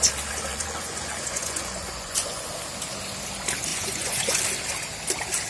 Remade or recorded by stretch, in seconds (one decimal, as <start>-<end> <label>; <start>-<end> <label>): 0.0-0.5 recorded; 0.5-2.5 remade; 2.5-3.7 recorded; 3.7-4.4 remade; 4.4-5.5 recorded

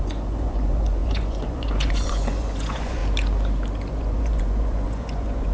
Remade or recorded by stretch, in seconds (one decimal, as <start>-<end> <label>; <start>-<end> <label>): 0.0-3.0 remade; 3.0-3.9 recorded; 3.9-5.5 remade

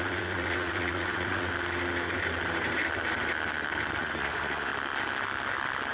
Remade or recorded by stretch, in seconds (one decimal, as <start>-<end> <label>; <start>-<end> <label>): 0.0-1.5 remade; 1.5-4.0 recorded; 4.0-4.7 remade; 4.7-5.9 recorded

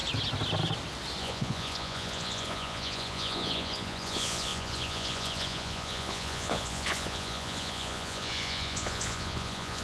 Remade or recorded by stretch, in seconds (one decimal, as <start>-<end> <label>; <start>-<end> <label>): 0.0-1.2 recorded; 1.2-9.8 remade